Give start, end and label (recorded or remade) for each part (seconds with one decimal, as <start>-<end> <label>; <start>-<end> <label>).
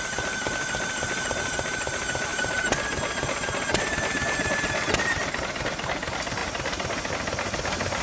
0.0-8.0 recorded